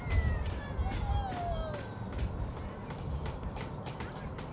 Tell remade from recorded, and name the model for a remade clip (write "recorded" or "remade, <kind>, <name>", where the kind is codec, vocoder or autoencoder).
recorded